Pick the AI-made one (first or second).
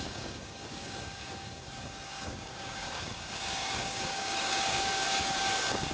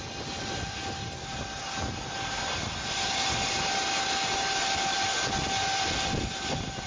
first